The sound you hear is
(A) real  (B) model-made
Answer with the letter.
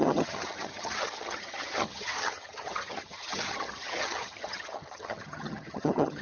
B